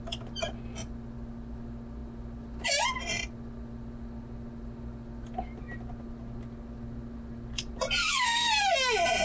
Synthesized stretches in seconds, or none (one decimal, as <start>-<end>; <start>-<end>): 8.0-8.5